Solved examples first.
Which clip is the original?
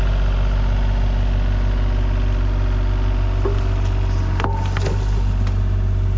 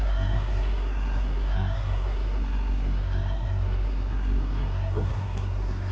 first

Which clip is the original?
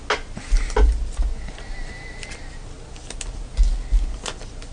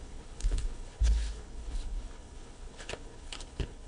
first